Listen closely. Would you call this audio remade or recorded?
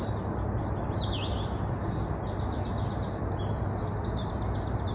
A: recorded